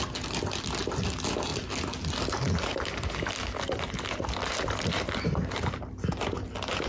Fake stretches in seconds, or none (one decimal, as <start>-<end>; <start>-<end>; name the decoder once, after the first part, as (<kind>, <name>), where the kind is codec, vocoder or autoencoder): none